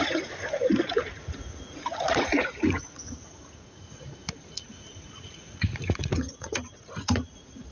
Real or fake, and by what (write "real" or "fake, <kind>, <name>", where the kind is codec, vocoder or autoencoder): fake, vocoder, Vocos